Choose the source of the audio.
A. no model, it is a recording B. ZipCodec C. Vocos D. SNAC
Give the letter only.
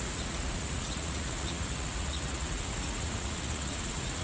C